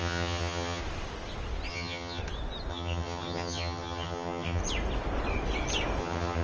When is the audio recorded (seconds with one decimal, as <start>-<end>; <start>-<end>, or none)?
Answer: 0.8-1.7; 2.2-2.7; 4.6-6.0